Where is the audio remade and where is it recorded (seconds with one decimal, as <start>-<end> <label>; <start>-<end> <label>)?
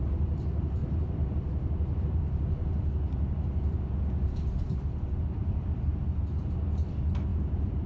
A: 0.0-0.8 recorded; 0.8-3.8 remade; 3.8-5.4 recorded; 5.4-6.0 remade; 6.0-7.3 recorded; 7.3-7.9 remade